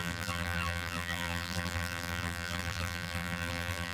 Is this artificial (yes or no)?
yes